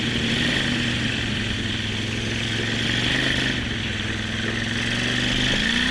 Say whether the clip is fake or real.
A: real